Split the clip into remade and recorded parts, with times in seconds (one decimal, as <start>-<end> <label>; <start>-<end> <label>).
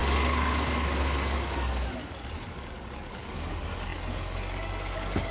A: 0.0-5.3 remade